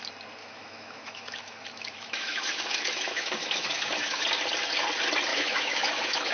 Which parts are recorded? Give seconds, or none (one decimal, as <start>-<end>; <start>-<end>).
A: 0.0-0.4; 4.2-5.3